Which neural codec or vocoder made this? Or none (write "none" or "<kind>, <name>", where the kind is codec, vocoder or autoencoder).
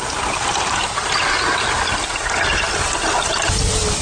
none